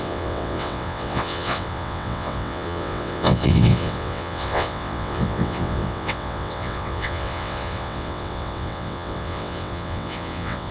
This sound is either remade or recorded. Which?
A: remade